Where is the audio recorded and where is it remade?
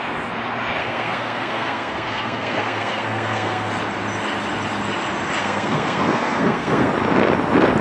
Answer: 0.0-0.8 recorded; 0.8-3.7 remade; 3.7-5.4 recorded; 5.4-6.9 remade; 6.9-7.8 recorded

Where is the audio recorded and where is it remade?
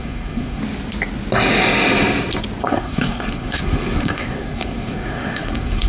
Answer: 0.0-0.6 remade; 0.6-2.6 recorded; 2.6-5.9 remade